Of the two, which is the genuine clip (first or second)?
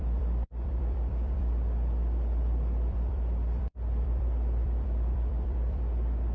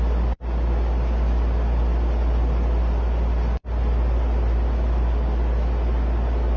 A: second